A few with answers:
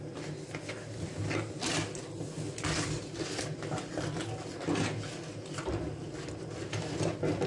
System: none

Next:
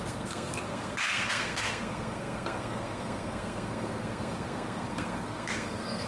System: codec, SNAC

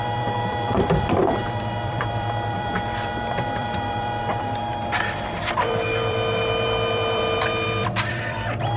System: vocoder, BigVGAN v2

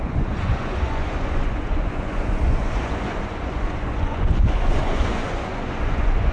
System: vocoder, Vocos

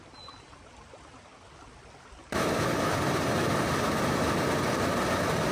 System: none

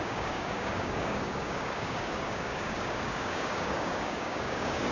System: codec, DAC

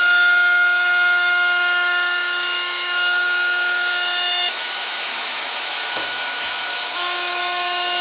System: autoencoder, DAC-VAE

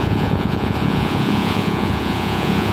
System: vocoder, Vocos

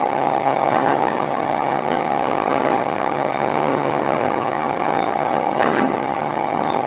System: vocoder, HiFi-GAN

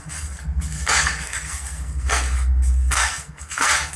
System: codec, SNAC